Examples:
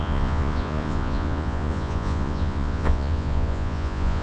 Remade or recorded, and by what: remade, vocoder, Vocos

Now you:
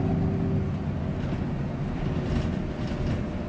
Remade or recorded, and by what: recorded